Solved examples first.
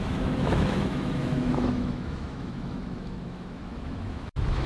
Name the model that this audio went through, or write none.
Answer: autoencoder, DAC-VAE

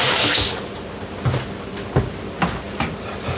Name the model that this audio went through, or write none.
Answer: none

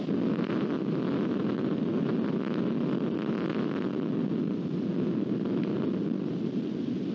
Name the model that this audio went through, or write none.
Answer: none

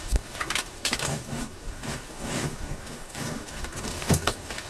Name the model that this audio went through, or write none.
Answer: codec, DAC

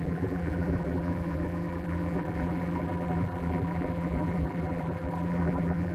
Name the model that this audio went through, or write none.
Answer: vocoder, BigVGAN v2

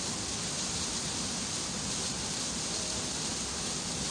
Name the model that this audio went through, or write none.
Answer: none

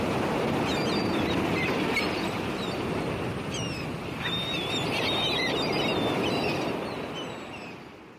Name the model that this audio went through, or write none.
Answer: none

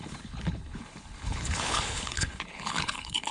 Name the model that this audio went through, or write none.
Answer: codec, HILCodec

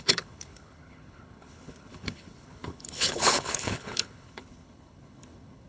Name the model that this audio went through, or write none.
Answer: codec, HILCodec